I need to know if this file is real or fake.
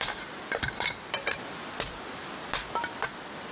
real